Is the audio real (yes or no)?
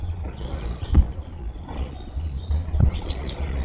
no